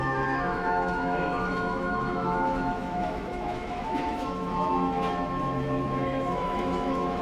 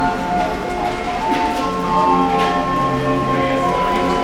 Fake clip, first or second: first